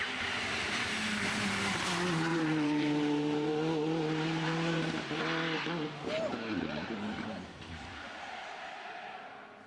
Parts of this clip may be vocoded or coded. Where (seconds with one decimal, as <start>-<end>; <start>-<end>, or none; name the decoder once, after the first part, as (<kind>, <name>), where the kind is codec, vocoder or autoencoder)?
2.3-5.2 (vocoder, BigVGAN v2); 6.3-6.9